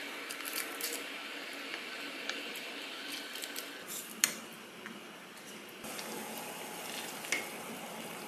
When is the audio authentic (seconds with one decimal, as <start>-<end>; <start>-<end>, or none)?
0.0-8.3

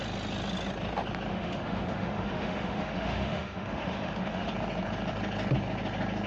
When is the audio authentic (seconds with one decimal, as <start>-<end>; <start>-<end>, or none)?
0.0-1.3; 4.5-6.3

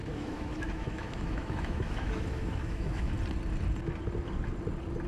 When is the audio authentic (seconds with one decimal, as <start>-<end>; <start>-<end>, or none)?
3.1-5.1